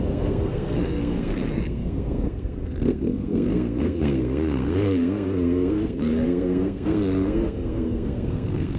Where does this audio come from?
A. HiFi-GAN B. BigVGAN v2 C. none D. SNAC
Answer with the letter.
D